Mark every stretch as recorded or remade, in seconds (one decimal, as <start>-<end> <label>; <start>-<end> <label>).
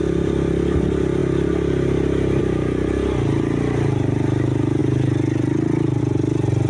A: 0.0-6.7 recorded